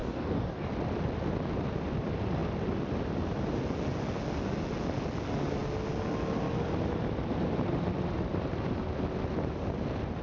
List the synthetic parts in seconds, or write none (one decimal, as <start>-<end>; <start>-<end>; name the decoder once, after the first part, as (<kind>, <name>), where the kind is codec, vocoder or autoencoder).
0.0-0.7 (codec, DAC)